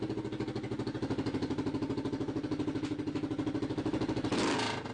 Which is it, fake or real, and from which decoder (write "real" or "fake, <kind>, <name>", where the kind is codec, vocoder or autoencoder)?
real